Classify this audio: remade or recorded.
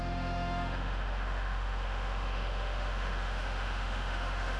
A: remade